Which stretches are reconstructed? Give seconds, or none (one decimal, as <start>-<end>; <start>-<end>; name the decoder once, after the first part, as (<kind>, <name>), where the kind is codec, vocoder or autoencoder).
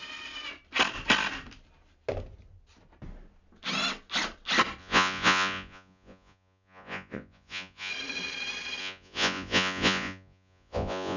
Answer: 4.8-7.9 (vocoder, Vocos); 8.8-11.2